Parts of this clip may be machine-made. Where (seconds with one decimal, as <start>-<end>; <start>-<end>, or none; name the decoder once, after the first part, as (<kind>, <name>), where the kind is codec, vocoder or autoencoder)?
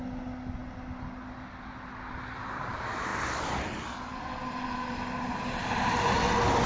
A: none